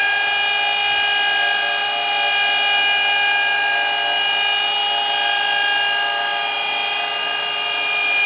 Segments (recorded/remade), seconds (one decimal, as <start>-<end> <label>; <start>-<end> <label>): 0.0-8.3 recorded